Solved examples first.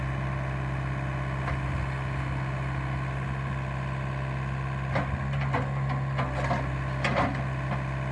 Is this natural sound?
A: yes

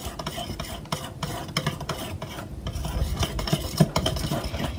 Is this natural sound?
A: yes